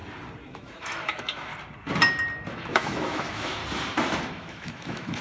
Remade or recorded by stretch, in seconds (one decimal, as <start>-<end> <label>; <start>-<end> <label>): 0.0-0.5 recorded; 0.5-1.5 remade; 1.5-2.5 recorded; 2.5-3.6 remade; 3.6-4.3 recorded; 4.3-5.2 remade